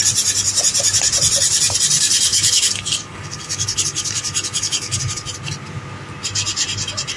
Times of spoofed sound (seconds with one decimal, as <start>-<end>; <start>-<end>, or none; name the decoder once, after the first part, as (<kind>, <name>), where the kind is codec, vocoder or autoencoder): 2.3-5.0 (codec, DAC)